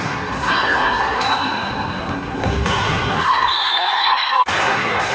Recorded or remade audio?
remade